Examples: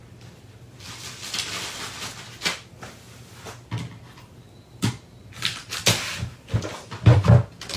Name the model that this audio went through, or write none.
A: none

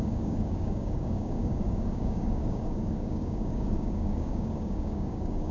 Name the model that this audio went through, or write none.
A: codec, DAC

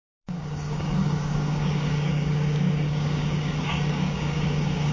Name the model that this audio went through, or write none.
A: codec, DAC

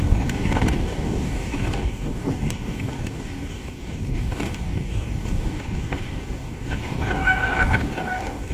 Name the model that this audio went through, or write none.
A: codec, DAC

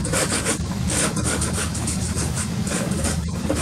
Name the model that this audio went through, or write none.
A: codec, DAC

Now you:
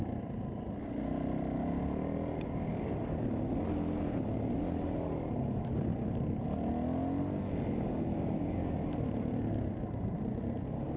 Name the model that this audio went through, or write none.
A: none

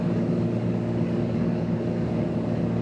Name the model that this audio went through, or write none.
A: codec, DAC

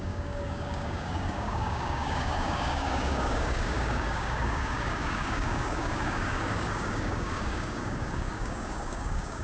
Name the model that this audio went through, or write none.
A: codec, DAC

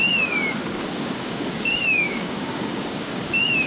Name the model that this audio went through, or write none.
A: codec, DAC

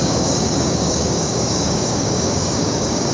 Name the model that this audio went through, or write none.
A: codec, DAC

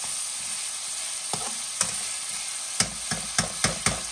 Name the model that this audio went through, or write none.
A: none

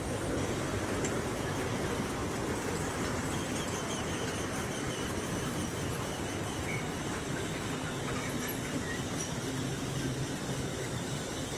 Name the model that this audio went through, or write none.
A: none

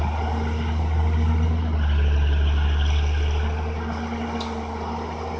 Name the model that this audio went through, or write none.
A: none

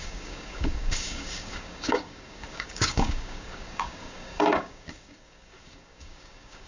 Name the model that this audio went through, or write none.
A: codec, DAC